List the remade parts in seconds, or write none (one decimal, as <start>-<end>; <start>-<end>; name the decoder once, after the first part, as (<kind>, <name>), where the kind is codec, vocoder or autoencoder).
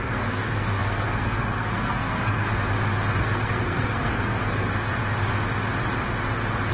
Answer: 0.0-2.5 (codec, SNAC); 3.2-5.0